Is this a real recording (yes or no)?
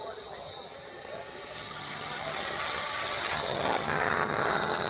no